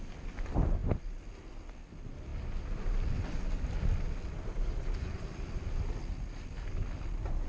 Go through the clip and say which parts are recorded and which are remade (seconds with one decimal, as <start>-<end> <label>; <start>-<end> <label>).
0.0-7.5 recorded